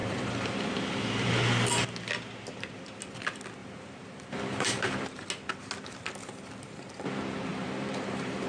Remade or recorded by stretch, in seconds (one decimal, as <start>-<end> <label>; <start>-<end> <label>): 0.0-1.0 remade; 1.0-3.6 recorded; 3.6-5.3 remade; 5.3-7.5 recorded; 7.5-8.5 remade